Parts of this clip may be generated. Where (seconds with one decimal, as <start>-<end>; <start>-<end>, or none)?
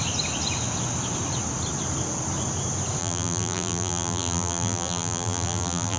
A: 3.0-6.0